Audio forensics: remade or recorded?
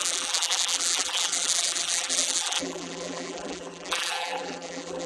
remade